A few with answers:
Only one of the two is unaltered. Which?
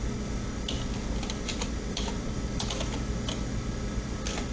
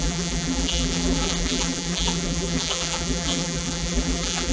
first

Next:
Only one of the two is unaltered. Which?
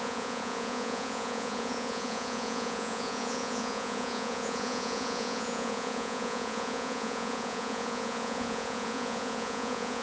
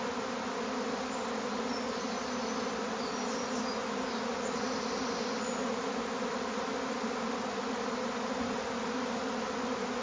second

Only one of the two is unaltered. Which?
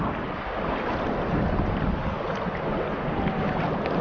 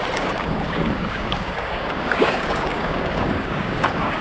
first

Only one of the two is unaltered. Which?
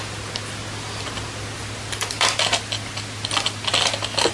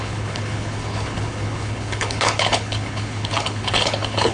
first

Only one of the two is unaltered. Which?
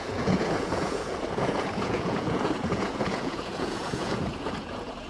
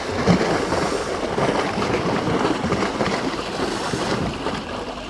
second